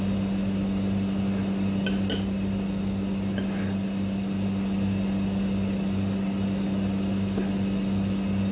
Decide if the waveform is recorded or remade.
recorded